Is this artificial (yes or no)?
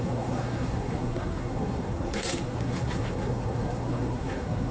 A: yes